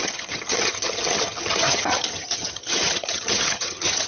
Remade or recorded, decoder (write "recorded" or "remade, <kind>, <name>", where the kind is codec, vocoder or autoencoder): remade, vocoder, HiFi-GAN